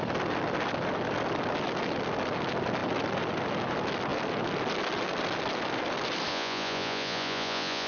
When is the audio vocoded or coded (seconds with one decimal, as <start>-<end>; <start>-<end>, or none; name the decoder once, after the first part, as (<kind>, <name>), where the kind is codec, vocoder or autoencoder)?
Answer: 6.3-7.9 (vocoder, Vocos)